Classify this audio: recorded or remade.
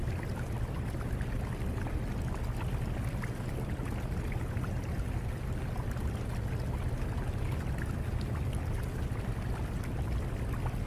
recorded